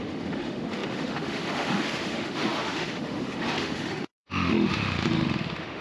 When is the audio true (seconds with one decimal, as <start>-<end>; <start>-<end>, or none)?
none